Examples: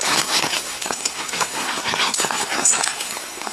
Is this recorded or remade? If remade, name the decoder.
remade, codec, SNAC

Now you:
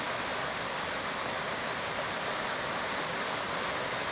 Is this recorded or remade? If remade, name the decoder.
recorded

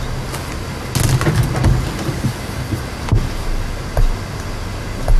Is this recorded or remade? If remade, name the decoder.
recorded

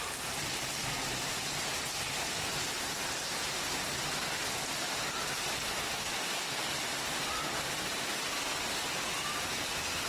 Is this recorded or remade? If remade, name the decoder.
recorded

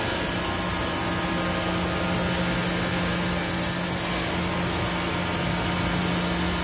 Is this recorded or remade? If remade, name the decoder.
recorded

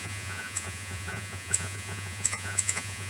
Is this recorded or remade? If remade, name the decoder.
remade, vocoder, Vocos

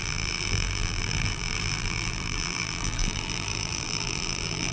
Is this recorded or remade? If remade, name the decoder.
remade, vocoder, BigVGAN v2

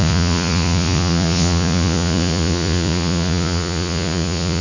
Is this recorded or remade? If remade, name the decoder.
remade, vocoder, Vocos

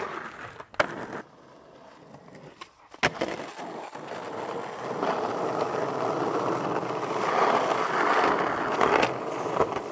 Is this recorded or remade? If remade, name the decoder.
recorded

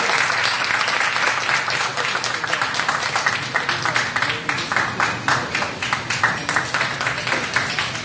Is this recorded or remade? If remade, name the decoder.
recorded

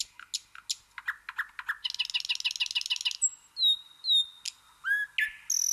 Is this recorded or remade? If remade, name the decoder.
recorded